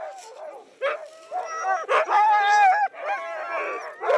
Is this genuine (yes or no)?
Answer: yes